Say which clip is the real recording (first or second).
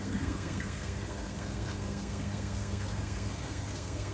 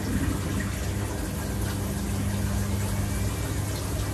second